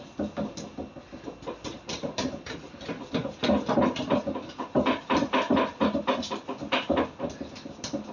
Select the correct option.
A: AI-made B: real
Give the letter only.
B